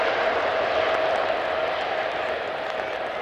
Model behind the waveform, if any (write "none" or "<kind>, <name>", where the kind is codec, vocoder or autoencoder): none